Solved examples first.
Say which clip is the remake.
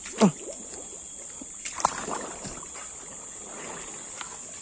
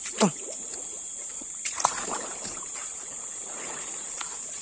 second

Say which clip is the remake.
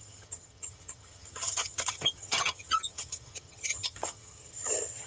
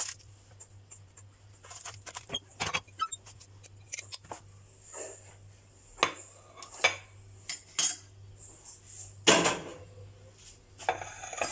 first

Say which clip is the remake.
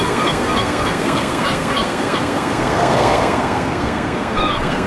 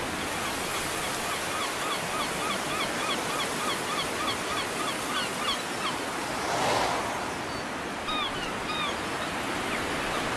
first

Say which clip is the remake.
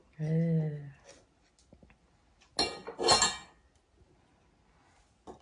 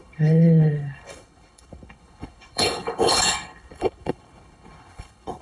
second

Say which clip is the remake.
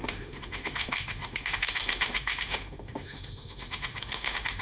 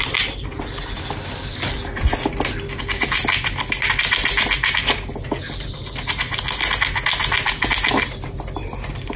first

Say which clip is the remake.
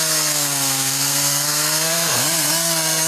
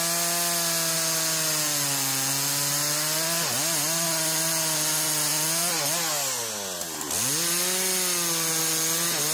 first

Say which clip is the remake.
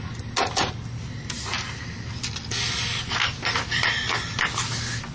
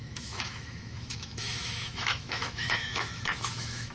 second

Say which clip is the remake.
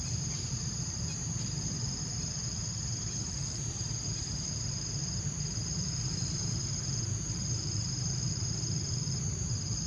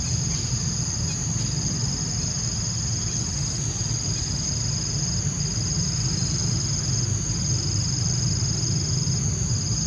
first